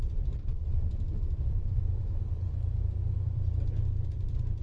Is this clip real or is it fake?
fake